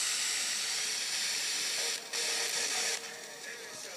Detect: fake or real real